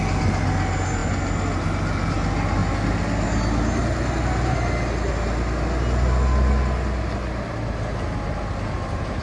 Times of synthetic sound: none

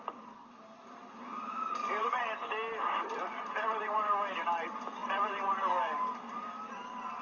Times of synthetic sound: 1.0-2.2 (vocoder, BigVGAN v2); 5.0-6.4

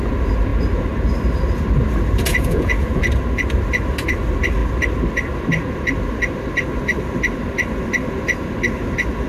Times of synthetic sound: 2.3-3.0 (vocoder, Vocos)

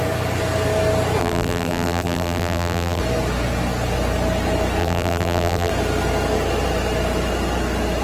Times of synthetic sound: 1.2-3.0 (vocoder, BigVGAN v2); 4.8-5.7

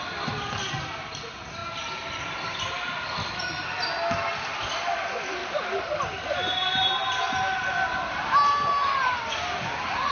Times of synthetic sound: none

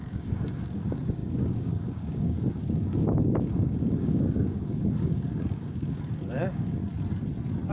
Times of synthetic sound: 0.0-6.8 (codec, DAC)

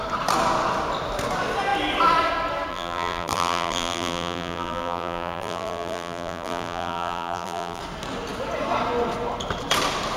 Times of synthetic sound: 2.7-7.8 (vocoder, BigVGAN v2)

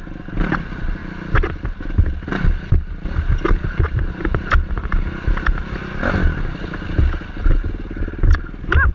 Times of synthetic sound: none